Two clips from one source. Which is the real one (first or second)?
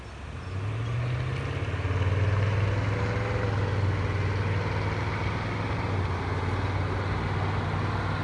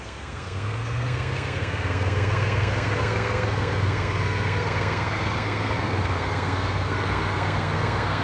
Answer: first